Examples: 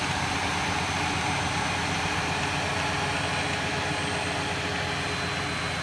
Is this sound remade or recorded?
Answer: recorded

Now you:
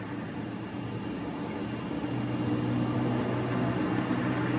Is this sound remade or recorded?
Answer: recorded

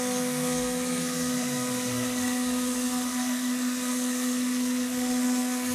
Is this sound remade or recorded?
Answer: remade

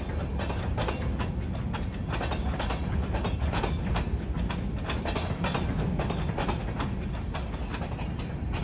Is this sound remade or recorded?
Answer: recorded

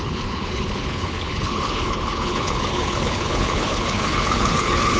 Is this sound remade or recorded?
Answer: remade